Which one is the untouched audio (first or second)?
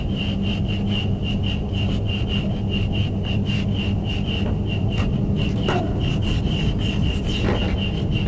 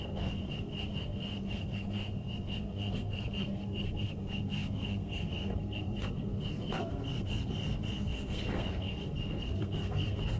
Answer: first